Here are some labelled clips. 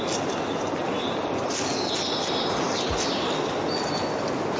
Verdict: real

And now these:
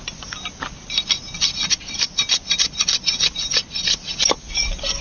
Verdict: real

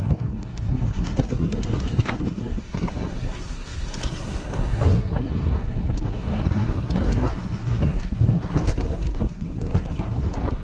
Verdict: fake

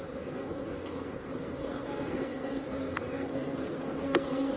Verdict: fake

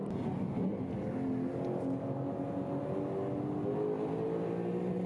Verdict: real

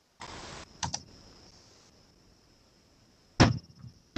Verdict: real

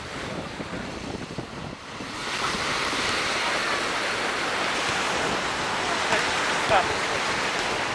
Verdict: real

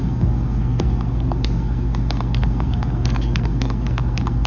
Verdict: fake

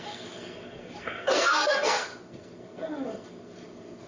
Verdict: fake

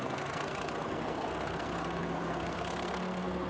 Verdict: fake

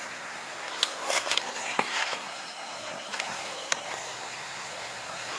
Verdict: fake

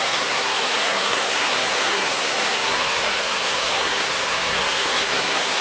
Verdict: fake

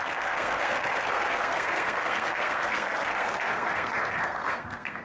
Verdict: fake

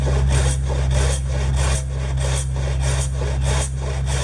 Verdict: real